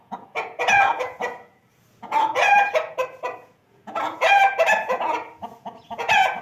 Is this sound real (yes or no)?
no